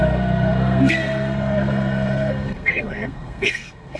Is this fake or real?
fake